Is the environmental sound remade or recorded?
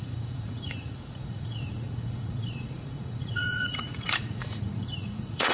remade